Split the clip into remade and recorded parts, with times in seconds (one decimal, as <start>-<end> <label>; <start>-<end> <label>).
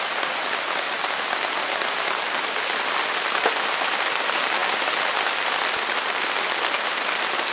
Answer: 0.0-7.5 recorded